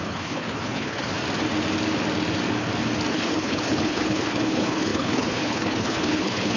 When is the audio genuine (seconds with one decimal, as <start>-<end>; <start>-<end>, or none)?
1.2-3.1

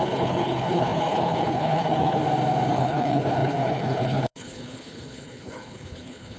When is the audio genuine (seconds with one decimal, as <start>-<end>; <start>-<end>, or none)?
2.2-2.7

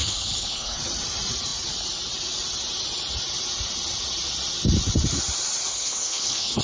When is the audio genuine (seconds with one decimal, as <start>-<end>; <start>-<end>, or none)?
0.8-5.7